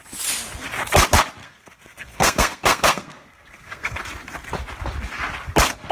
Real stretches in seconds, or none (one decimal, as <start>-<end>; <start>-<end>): 0.0-1.4; 4.0-5.9